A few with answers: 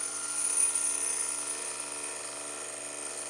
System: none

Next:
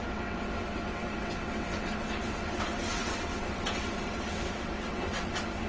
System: vocoder, WaveNeXt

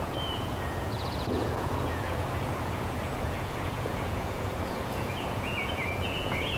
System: vocoder, Vocos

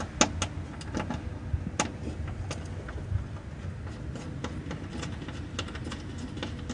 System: none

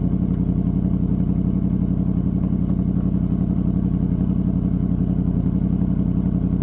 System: none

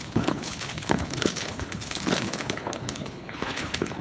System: codec, HILCodec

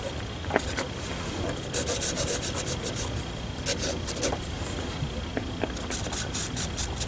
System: none